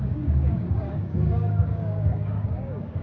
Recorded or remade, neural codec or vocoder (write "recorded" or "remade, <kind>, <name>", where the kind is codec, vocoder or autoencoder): remade, codec, DAC